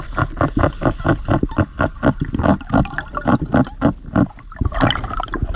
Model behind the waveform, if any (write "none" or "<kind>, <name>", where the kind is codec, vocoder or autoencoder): none